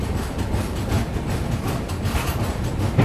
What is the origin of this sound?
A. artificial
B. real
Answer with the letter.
B